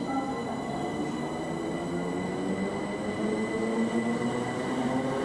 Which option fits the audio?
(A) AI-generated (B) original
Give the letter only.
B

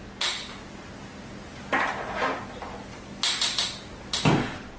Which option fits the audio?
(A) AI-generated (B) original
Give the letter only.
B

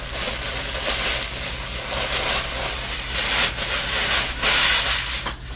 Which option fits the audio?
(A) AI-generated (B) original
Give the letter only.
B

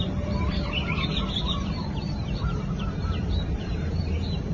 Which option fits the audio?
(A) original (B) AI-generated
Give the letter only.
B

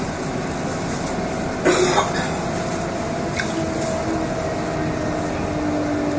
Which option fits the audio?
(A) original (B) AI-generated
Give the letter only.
A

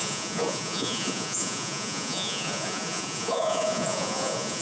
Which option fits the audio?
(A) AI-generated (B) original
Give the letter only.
A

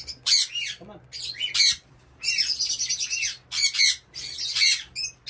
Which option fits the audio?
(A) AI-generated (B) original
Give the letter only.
B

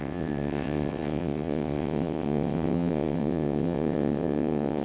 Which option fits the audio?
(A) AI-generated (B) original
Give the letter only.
A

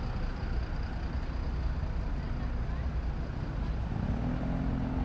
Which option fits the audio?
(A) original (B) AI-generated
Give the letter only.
A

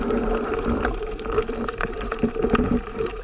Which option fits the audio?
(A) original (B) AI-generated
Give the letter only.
B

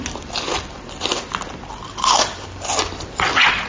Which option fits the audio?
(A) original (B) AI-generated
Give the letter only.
A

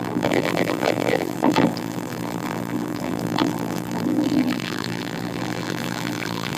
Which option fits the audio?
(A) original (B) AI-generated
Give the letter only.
B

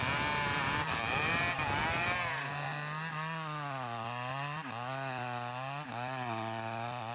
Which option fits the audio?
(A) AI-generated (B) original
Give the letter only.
B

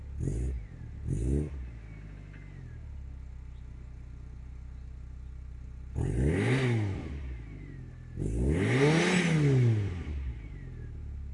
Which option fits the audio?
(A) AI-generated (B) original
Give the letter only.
B